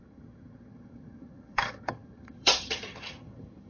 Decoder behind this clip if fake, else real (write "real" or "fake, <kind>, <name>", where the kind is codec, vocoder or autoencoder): fake, vocoder, HiFi-GAN